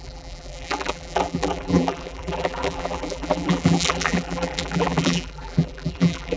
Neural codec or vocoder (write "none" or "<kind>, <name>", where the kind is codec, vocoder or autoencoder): vocoder, BigVGAN v2